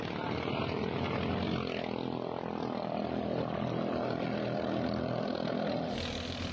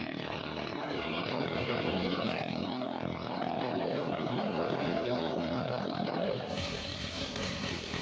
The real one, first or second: first